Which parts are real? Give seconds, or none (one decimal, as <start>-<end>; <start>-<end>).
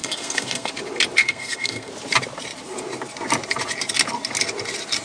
0.7-1.2; 1.9-5.0